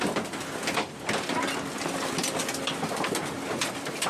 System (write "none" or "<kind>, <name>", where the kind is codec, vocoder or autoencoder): none